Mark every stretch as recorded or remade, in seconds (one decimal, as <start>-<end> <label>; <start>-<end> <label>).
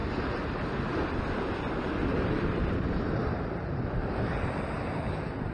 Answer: 0.0-2.1 recorded; 2.1-5.5 remade